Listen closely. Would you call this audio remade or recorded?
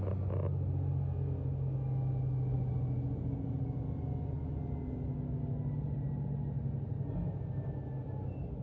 recorded